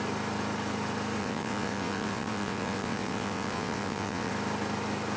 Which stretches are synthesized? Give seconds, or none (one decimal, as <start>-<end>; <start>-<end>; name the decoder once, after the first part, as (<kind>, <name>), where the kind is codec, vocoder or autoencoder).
1.2-4.3 (vocoder, WaveNeXt)